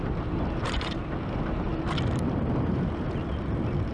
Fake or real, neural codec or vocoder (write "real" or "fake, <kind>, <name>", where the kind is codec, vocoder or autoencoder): real